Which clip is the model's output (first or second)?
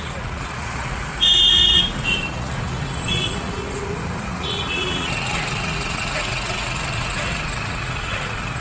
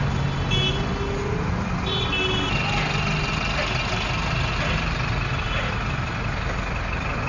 first